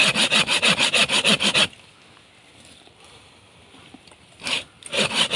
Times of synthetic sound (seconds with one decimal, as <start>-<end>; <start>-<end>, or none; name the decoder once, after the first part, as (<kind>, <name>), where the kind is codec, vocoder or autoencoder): none